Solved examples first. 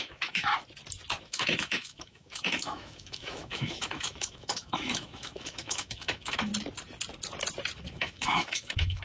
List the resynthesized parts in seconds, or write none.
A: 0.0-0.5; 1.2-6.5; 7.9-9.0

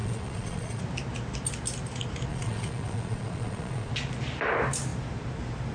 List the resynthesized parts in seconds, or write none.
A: 0.0-0.8; 2.3-3.9

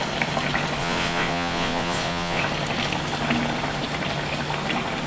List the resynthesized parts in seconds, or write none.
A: 0.8-2.4

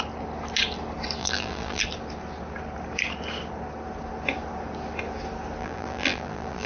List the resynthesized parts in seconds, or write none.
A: 1.2-1.8; 5.6-6.7

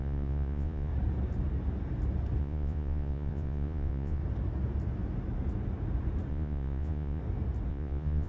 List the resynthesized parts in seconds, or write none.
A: 0.0-0.9; 2.4-4.2; 6.3-7.2; 7.7-8.3

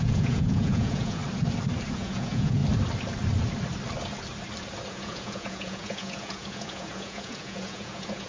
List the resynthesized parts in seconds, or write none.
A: 0.0-1.2; 1.9-2.6; 4.9-8.3

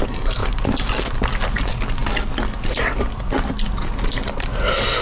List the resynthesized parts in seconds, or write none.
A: 0.4-0.9

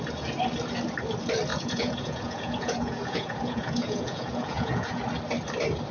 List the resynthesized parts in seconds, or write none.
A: 1.5-5.0